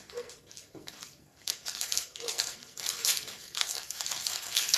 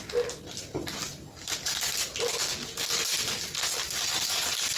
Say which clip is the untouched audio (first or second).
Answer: second